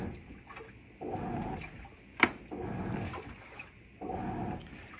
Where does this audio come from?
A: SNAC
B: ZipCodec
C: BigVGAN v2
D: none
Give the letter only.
D